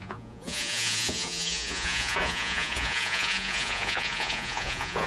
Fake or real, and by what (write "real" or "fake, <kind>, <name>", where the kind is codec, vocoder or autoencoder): fake, vocoder, Vocos